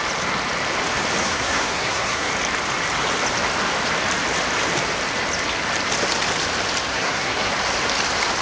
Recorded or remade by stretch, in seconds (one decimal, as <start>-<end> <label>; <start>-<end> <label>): 0.0-1.2 recorded; 1.2-2.3 remade; 2.3-6.9 recorded; 6.9-7.5 remade; 7.5-8.4 recorded